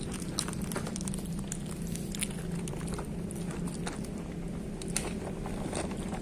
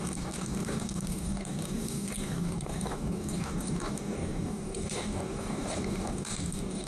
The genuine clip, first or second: first